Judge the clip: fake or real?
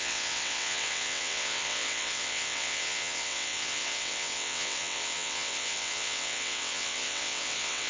fake